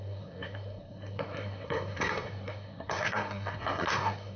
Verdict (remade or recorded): remade